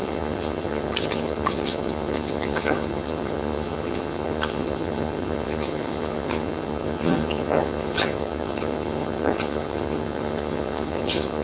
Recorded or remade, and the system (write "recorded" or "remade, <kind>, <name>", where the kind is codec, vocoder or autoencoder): remade, vocoder, HiFi-GAN